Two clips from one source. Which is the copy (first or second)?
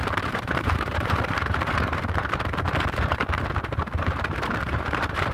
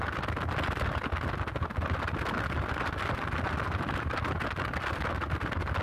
first